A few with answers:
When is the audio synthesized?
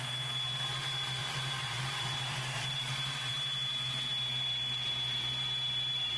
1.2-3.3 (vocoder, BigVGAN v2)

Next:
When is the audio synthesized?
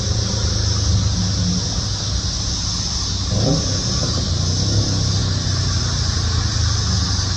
none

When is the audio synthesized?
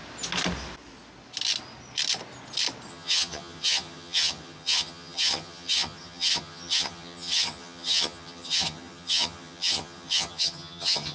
2.9-11.1 (vocoder, HiFi-GAN)